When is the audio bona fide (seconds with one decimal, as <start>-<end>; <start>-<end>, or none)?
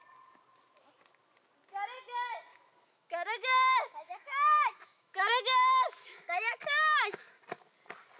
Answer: 0.0-2.5; 7.4-8.2